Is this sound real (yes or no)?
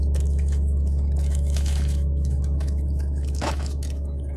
no